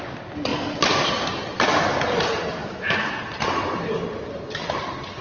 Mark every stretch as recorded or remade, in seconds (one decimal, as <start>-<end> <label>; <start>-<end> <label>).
0.0-2.6 recorded; 2.6-3.2 remade; 3.2-5.2 recorded